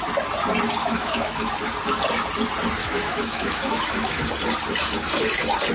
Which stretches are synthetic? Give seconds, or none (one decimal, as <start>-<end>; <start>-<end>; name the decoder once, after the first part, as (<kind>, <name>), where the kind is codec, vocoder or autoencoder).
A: 0.8-1.5 (autoencoder, DAC-VAE); 2.8-4.2